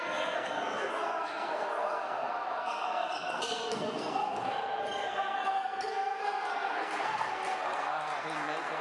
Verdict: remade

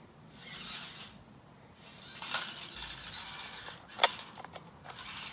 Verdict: recorded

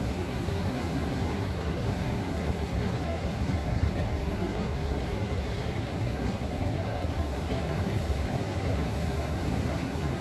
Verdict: remade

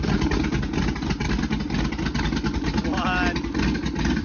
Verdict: recorded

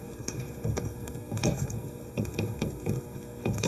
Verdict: remade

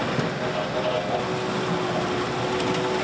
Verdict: recorded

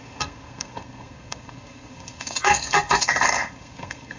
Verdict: remade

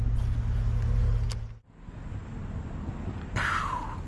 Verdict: recorded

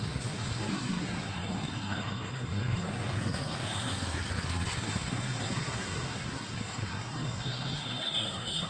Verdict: remade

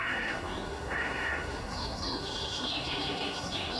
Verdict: remade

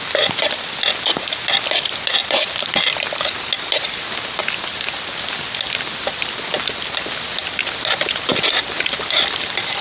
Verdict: recorded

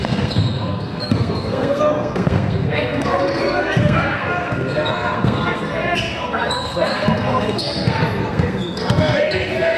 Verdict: remade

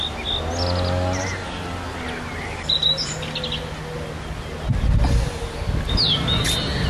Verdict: recorded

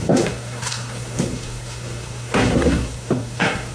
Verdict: remade